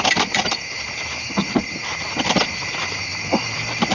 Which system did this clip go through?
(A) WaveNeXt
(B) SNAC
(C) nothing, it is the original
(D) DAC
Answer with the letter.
C